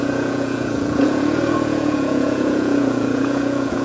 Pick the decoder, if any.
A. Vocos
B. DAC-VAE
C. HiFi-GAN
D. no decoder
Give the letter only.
A